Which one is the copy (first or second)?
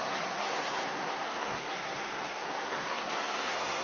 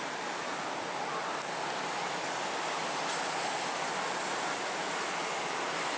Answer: first